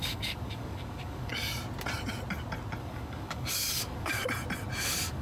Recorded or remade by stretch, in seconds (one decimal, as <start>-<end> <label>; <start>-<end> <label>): 0.0-1.3 remade; 1.3-2.8 recorded; 2.8-4.2 remade; 4.2-4.8 recorded; 4.8-5.2 remade